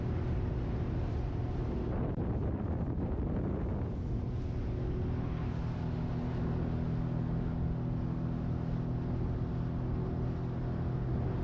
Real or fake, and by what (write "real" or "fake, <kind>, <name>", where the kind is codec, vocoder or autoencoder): real